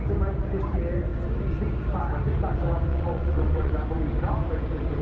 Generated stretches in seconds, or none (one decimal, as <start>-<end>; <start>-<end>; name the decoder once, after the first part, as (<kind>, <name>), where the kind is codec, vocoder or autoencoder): 2.9-3.7 (vocoder, WaveNeXt)